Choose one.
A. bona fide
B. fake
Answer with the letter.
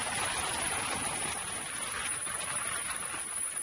A